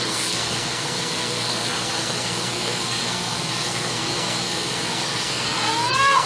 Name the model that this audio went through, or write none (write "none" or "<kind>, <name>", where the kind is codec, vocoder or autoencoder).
codec, SNAC